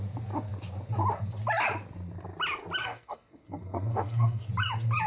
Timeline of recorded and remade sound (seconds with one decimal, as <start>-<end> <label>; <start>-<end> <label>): 0.0-2.8 recorded; 2.8-4.5 remade; 4.5-5.1 recorded